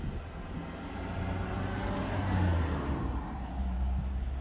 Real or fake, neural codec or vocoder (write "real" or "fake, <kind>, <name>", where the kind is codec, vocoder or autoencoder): real